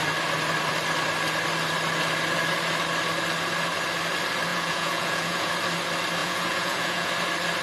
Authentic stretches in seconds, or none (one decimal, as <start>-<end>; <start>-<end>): 0.0-4.5; 5.5-6.2; 7.1-7.6